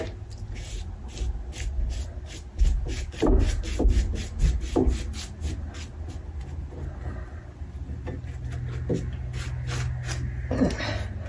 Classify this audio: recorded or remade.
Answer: recorded